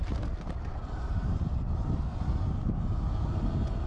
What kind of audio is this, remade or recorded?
recorded